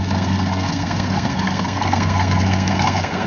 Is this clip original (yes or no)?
no